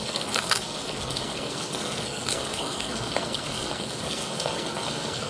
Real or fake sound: fake